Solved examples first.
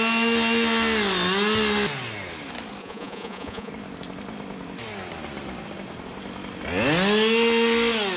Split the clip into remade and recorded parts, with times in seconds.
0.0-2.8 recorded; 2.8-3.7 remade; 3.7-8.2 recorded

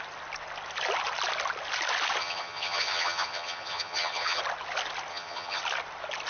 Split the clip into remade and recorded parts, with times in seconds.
0.0-2.2 recorded; 2.2-4.4 remade; 4.4-5.1 recorded; 5.1-5.6 remade; 5.6-6.3 recorded

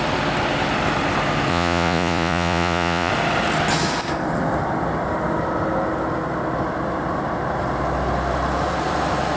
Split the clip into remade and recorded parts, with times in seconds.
0.0-1.5 recorded; 1.5-3.1 remade; 3.1-9.4 recorded

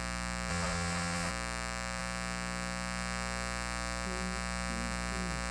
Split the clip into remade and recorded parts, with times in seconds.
0.0-0.5 recorded; 0.5-1.3 remade; 1.3-5.5 recorded

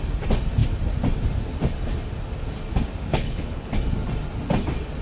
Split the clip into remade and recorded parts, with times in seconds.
0.0-3.1 recorded; 3.1-3.7 remade; 3.7-5.0 recorded

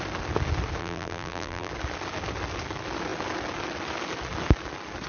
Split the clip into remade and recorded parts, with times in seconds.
0.0-0.8 recorded; 0.8-1.7 remade; 1.7-5.1 recorded

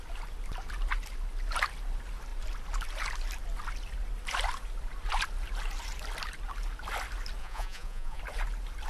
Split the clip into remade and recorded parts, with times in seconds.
0.0-7.4 recorded; 7.4-8.2 remade; 8.2-8.9 recorded

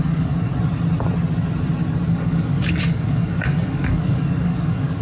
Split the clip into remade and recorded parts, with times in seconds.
0.0-0.5 remade; 0.5-2.1 recorded; 2.1-5.0 remade